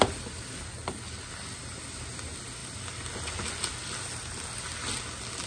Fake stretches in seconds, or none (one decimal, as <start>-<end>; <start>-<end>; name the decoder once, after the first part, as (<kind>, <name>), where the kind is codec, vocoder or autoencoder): none